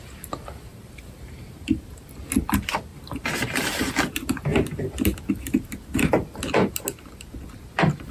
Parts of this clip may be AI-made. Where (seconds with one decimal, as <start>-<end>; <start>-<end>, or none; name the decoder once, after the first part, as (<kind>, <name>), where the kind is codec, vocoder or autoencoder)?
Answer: 0.7-1.9 (vocoder, BigVGAN v2); 2.9-3.9